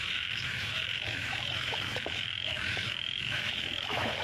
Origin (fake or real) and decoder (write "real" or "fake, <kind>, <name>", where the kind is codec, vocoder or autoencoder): fake, autoencoder, DAC-VAE